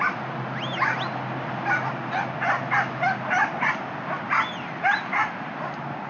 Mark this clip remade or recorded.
recorded